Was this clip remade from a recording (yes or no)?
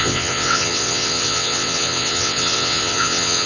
yes